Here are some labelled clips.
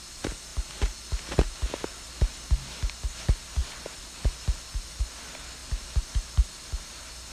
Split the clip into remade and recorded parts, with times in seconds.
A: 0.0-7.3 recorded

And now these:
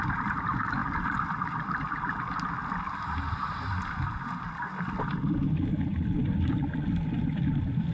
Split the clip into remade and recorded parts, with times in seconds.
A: 0.0-0.8 recorded; 0.8-2.5 remade; 2.5-5.9 recorded; 5.9-6.6 remade; 6.6-7.9 recorded

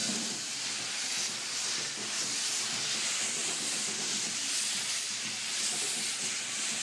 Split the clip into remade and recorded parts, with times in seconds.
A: 0.0-3.4 recorded; 3.4-5.2 remade; 5.2-6.8 recorded